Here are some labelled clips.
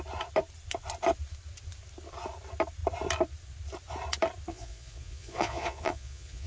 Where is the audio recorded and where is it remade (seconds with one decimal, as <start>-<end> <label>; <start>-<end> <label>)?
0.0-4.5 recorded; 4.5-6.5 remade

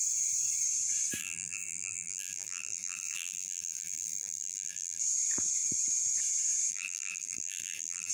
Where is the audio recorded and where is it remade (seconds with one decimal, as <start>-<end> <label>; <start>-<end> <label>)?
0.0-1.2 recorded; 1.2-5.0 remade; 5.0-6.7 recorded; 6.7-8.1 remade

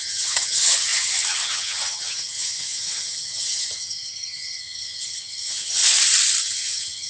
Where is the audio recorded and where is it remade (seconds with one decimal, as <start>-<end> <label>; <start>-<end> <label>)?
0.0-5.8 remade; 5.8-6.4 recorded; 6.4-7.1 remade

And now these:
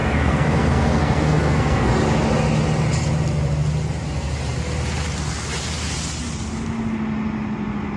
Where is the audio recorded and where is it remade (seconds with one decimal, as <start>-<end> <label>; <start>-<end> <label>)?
0.0-1.9 remade; 1.9-8.0 recorded

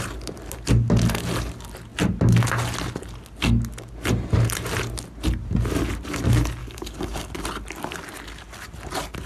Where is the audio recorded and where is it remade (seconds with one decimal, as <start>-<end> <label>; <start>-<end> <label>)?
0.0-6.6 recorded; 6.6-7.3 remade; 7.3-9.3 recorded

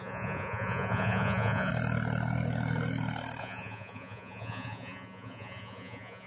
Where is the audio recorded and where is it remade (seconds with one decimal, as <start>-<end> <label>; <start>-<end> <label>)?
0.0-1.7 remade; 1.7-3.4 recorded; 3.4-6.3 remade